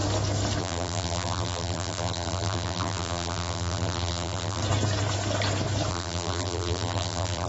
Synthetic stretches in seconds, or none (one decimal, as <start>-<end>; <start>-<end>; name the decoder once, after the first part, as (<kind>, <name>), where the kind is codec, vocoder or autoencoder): 0.6-4.6 (vocoder, BigVGAN v2); 5.9-7.5